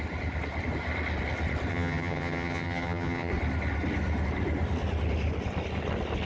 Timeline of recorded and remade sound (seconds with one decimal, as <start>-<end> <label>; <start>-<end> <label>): 0.0-1.7 recorded; 1.7-3.3 remade; 3.3-6.3 recorded